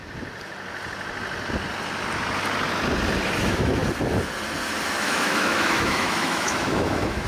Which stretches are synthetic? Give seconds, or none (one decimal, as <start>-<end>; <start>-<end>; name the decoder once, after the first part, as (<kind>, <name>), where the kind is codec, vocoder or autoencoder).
3.4-3.8 (autoencoder, DAC-VAE); 4.9-7.3